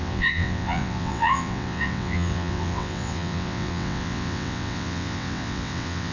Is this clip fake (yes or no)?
yes